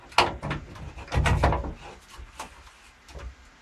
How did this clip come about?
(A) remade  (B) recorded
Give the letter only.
B